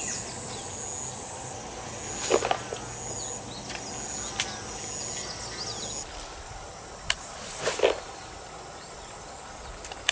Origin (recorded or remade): recorded